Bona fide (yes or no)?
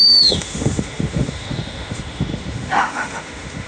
no